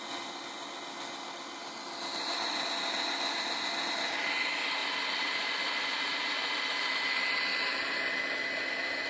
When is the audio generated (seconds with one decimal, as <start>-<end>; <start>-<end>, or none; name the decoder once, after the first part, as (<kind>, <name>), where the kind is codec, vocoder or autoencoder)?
4.8-6.2 (vocoder, BigVGAN v2)